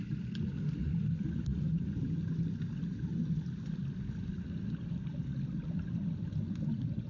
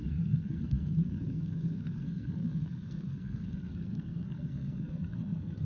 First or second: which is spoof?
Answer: second